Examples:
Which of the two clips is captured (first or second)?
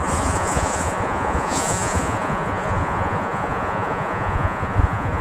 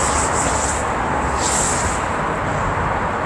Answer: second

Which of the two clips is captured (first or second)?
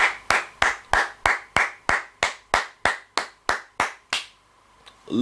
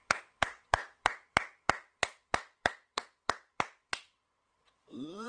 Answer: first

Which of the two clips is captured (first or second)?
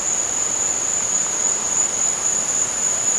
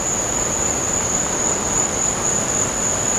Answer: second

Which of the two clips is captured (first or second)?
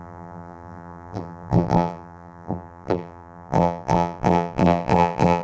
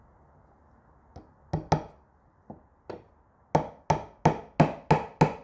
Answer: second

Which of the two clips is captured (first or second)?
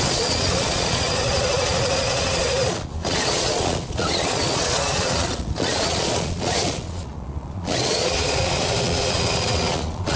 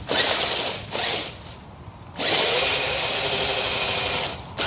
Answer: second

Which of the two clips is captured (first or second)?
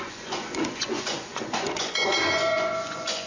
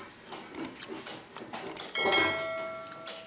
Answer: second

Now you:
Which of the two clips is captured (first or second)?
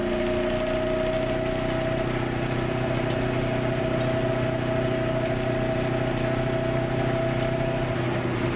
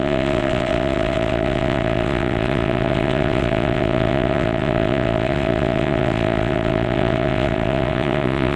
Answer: first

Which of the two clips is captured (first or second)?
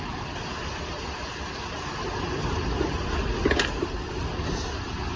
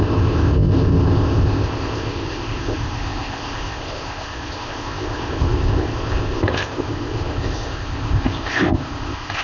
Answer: first